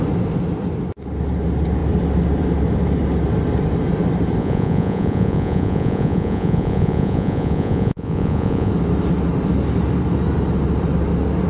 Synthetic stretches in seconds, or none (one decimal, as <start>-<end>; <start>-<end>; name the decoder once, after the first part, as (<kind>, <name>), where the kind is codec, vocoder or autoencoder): 4.4-8.7 (vocoder, Vocos)